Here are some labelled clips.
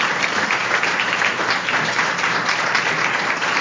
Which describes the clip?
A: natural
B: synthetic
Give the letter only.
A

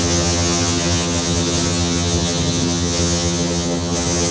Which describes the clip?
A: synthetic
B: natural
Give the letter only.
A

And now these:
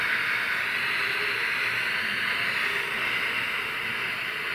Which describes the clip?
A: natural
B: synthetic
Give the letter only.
A